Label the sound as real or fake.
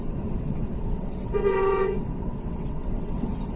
fake